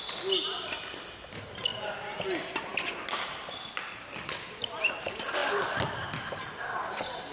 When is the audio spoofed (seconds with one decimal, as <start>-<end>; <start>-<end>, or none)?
none